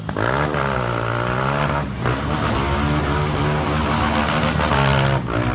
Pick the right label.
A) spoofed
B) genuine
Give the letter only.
B